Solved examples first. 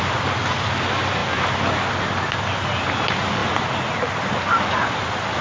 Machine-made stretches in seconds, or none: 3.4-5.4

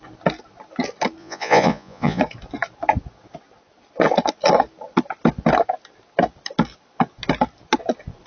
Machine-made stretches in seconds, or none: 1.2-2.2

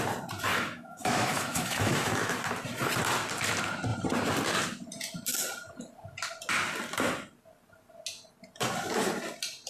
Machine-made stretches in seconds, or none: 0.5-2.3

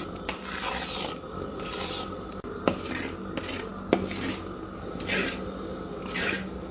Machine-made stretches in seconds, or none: 0.0-2.6

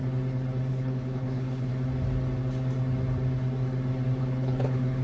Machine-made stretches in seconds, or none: 0.7-1.7; 4.2-5.0

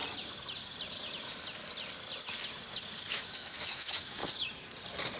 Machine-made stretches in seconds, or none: 3.1-4.2

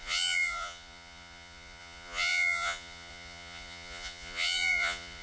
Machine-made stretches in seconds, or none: 0.0-5.2

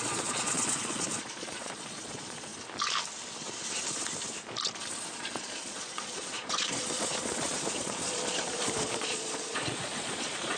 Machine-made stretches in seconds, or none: 0.0-2.5; 5.1-10.6